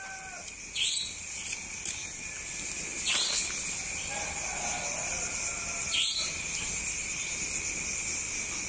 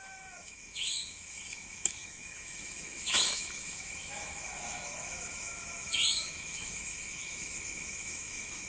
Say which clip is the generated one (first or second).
second